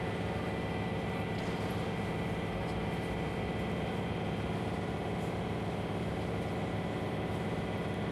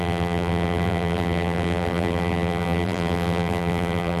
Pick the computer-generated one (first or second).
second